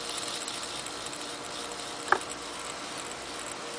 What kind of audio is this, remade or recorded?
recorded